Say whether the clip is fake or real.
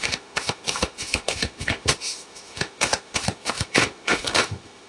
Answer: fake